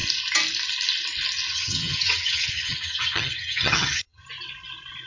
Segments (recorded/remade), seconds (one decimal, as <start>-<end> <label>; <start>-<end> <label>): 0.0-1.5 recorded; 1.5-4.2 remade; 4.2-5.1 recorded